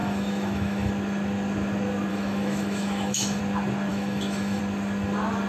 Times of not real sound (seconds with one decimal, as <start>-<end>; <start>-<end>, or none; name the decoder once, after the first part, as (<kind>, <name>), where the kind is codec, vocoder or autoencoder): 0.0-0.9 (autoencoder, DAC-VAE); 2.1-3.4; 3.9-4.6